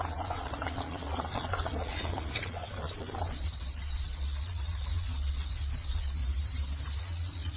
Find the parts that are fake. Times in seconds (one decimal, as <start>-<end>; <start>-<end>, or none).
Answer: 0.0-6.2; 7.0-7.6